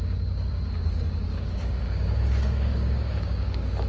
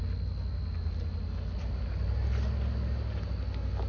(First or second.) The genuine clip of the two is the second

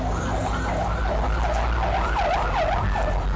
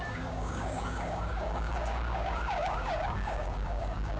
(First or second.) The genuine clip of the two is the first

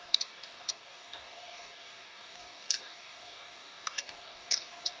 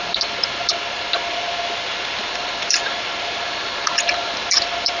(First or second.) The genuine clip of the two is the second